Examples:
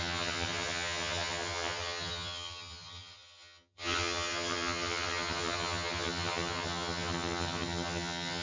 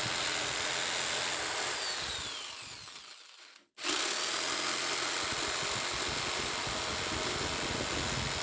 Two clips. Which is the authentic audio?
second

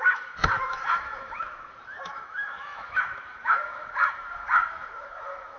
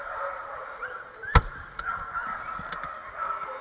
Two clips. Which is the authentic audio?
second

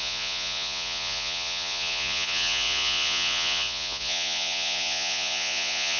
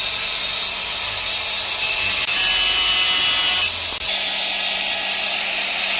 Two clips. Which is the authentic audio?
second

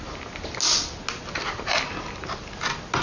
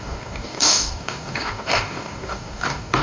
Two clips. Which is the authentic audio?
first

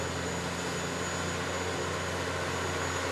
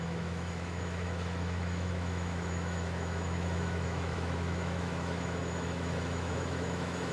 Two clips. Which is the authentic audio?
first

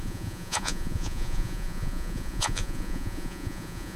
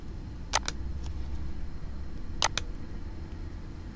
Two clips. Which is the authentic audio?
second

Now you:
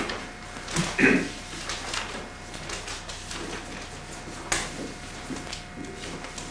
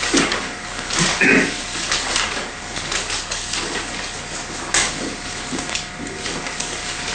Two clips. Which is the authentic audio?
first